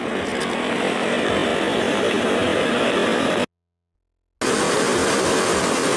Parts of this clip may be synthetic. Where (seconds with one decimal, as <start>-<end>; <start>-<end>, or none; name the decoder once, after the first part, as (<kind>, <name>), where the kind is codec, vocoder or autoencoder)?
none